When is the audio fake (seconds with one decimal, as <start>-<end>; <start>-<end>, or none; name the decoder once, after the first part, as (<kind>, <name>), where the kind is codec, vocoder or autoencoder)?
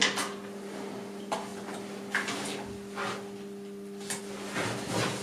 none